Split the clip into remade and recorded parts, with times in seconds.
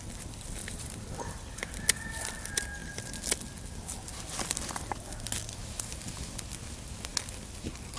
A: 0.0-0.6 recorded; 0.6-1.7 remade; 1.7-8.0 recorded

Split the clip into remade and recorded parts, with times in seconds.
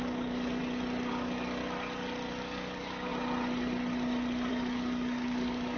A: 0.0-0.6 remade; 0.6-1.1 recorded; 1.1-1.6 remade; 1.6-2.3 recorded; 2.3-3.1 remade; 3.1-4.5 recorded; 4.5-5.8 remade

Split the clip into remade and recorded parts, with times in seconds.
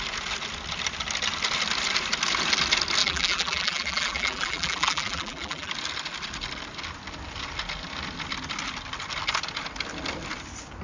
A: 0.0-3.0 recorded; 3.0-5.7 remade; 5.7-10.8 recorded